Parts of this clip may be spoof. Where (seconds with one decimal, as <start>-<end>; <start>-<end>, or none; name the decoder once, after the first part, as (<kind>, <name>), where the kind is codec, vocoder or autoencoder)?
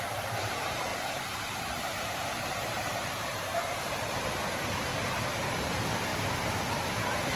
0.0-6.1 (vocoder, BigVGAN v2); 6.7-7.4